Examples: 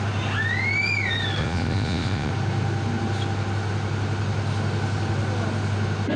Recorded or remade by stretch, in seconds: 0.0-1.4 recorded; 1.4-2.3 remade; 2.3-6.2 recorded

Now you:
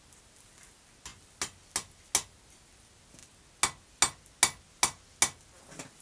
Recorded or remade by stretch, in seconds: 0.0-6.0 recorded